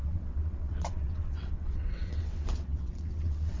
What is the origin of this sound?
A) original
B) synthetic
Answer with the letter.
B